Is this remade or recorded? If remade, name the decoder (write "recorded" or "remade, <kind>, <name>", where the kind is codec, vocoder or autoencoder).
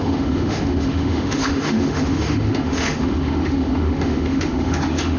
remade, autoencoder, DAC-VAE